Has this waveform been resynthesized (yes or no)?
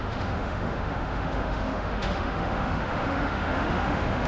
yes